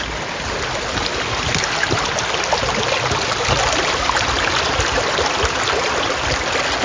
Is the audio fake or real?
real